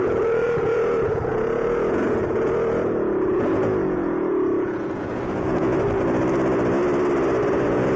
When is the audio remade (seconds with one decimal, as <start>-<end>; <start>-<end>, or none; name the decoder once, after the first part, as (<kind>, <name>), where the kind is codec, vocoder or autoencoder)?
0.0-5.7 (vocoder, Vocos); 7.5-8.0